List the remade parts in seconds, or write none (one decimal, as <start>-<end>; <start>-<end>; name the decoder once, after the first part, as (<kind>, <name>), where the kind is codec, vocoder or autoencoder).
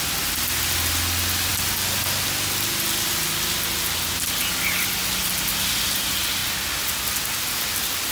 none